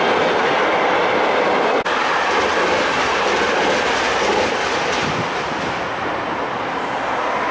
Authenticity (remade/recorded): recorded